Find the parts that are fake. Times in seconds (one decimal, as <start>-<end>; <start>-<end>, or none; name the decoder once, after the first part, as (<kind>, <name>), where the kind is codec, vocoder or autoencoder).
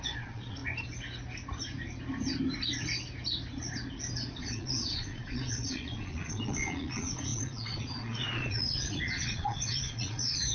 0.0-0.6 (vocoder, Vocos); 4.4-10.5